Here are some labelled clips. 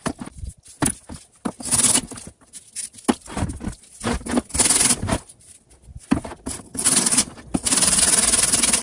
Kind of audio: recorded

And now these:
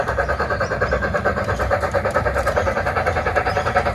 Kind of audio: remade